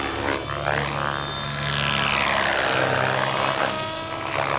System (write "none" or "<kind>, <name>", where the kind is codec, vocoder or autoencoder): none